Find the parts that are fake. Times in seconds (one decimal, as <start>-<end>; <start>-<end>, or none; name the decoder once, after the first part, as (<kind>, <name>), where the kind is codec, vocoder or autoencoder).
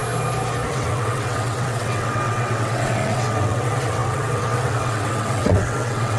0.7-6.2 (vocoder, WaveNeXt)